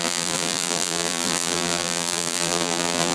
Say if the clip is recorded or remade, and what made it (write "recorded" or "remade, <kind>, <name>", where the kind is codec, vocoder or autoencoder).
remade, vocoder, BigVGAN v2